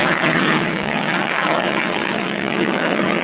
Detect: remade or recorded remade